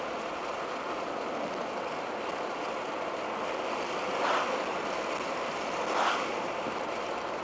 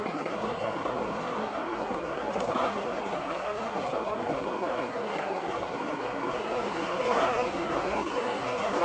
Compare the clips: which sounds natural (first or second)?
first